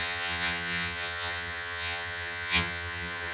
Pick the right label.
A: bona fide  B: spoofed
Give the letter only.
B